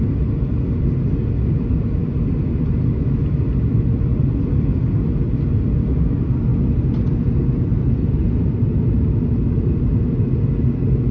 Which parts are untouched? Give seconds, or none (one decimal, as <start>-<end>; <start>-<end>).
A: 0.0-11.1